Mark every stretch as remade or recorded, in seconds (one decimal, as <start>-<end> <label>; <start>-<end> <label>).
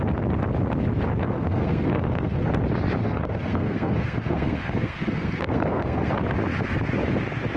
0.0-1.2 recorded; 1.2-2.5 remade; 2.5-3.0 recorded; 3.0-6.1 remade; 6.1-7.6 recorded